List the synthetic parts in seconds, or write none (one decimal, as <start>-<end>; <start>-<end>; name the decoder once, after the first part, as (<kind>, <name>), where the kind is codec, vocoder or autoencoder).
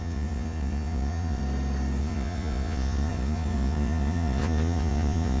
0.0-1.4 (vocoder, Vocos); 2.0-5.4